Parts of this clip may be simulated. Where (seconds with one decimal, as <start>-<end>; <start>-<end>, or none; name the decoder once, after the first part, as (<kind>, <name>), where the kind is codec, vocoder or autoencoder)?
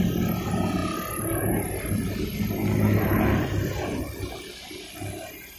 none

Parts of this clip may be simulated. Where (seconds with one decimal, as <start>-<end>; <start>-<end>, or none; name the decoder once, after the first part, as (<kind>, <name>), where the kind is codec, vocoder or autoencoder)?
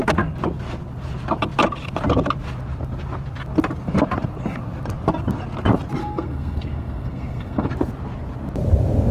6.0-7.7 (codec, SNAC)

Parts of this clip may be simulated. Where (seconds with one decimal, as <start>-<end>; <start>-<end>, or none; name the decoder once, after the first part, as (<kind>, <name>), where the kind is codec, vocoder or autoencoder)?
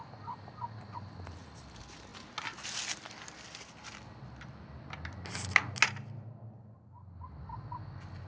none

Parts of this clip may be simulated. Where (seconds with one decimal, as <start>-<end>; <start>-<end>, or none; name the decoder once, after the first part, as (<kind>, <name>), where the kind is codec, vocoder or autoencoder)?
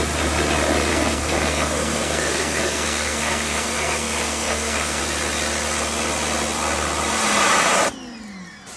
0.9-5.0 (codec, SNAC)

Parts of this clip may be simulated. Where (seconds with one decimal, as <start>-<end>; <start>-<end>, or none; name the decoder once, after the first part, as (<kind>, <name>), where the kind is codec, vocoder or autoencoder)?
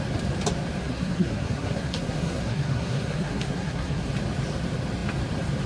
0.8-4.1 (codec, SNAC)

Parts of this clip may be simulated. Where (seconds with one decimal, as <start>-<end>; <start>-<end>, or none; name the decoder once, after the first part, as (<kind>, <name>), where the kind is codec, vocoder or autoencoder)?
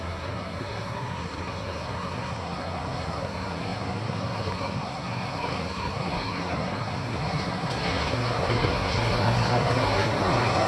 0.0-10.7 (codec, SNAC)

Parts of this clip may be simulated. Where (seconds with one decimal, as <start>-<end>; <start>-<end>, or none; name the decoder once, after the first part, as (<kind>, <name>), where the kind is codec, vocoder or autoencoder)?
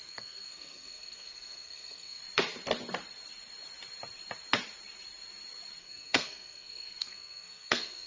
0.0-2.2 (codec, SNAC); 5.8-8.1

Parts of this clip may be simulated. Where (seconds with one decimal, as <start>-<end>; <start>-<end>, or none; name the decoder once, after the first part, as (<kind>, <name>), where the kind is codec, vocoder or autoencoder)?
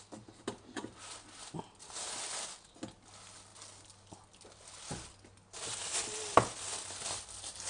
none